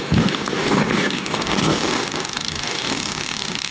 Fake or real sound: fake